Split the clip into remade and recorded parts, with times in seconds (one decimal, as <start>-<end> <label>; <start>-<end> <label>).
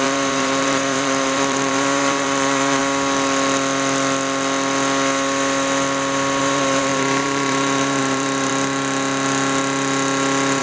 0.0-2.8 remade; 2.8-6.4 recorded; 6.4-8.5 remade; 8.5-10.6 recorded